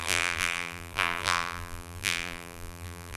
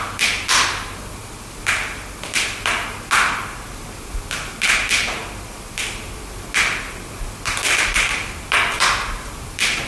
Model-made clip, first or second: first